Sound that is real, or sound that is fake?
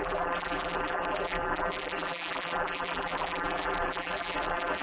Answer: fake